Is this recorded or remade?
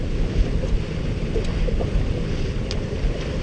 remade